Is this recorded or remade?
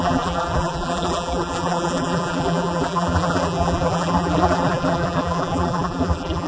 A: remade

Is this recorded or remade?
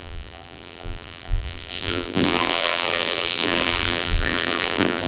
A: remade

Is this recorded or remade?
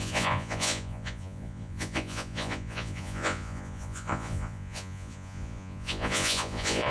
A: remade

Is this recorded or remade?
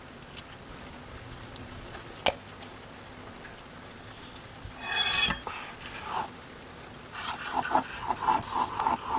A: recorded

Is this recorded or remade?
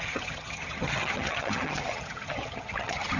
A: remade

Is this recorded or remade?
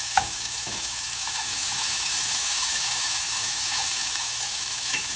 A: remade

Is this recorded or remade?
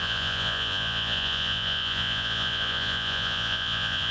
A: remade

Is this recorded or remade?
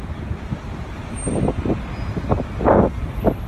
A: recorded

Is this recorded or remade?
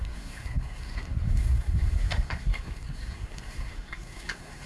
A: remade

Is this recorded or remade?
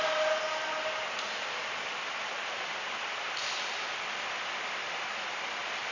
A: recorded